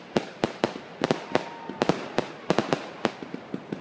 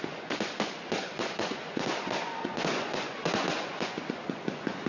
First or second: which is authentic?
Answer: first